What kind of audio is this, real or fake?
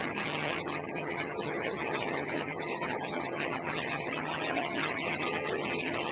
fake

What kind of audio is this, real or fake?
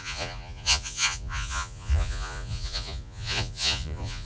fake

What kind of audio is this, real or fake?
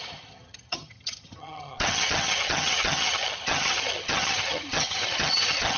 fake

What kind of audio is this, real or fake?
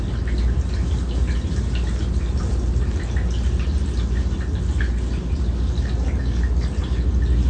real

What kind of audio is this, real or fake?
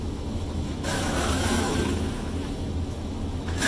fake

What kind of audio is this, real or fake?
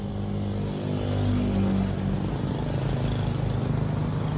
real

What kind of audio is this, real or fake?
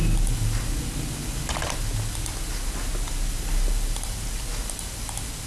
real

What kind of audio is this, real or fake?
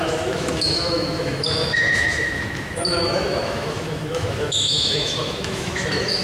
fake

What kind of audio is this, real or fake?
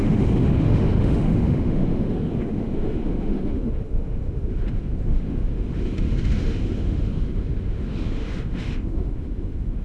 fake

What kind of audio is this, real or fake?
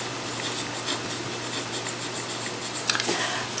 real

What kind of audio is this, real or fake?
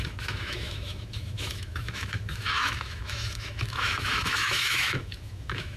fake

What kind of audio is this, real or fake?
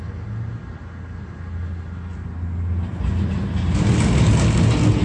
real